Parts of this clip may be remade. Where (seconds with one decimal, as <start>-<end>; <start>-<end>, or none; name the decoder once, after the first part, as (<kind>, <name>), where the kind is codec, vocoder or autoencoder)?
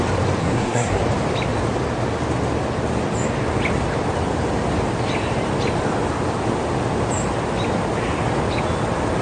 0.4-1.0 (codec, SNAC)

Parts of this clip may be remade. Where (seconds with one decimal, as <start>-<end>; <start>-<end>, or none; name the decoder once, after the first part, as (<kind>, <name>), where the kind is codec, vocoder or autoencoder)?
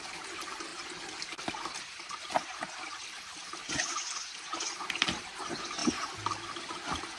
none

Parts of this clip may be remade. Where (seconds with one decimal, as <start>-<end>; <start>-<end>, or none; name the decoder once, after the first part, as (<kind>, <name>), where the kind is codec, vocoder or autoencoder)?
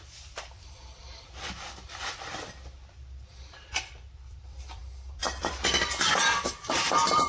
0.0-7.3 (vocoder, BigVGAN v2)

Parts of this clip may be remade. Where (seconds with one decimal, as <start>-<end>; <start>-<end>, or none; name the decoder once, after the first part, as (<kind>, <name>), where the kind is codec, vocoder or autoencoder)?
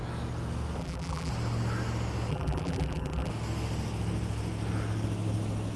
0.8-1.3 (vocoder, BigVGAN v2); 2.3-3.3